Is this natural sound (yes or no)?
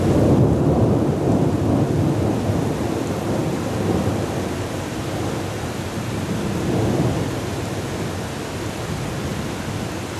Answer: yes